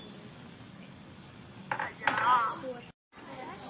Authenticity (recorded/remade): recorded